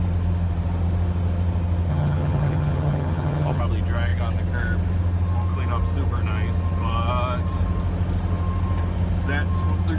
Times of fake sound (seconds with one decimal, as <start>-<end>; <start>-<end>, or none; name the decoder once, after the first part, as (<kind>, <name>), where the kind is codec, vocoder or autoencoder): 1.9-3.6 (vocoder, HiFi-GAN)